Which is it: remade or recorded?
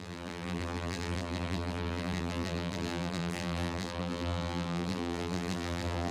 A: remade